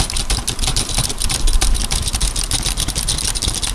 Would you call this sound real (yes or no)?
yes